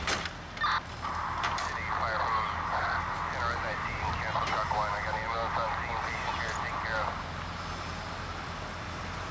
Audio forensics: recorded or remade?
recorded